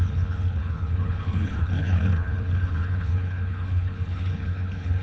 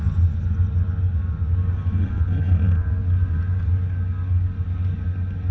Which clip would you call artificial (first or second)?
first